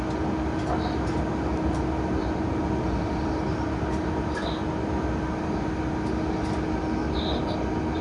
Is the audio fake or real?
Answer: real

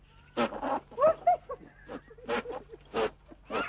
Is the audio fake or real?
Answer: real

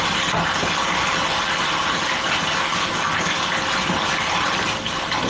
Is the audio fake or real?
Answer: real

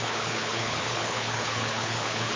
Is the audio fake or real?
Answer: fake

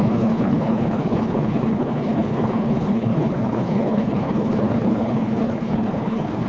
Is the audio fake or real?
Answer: fake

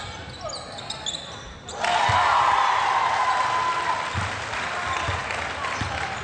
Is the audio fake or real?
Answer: real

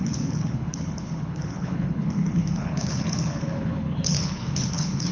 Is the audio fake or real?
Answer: fake